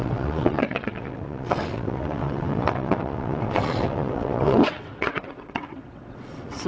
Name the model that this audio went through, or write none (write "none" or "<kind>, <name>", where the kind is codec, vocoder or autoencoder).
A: vocoder, WaveNeXt